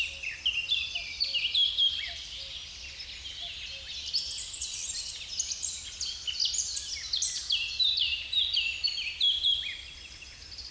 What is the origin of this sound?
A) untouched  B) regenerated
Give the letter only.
A